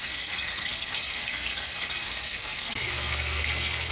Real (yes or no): no